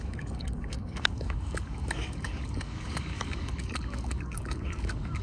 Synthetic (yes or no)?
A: yes